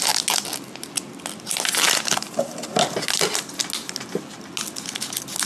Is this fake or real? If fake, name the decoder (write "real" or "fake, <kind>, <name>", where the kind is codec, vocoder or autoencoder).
real